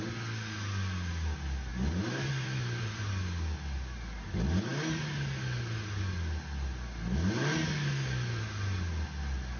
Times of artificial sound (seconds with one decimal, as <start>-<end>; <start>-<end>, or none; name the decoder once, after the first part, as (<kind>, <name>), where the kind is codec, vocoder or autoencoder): 1.7-3.1 (vocoder, BigVGAN v2)